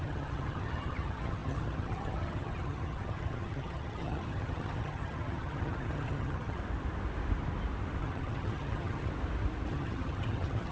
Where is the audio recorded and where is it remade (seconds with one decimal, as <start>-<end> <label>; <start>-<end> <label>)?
0.0-6.6 remade; 6.6-8.0 recorded; 8.0-9.1 remade; 9.1-9.7 recorded; 9.7-10.7 remade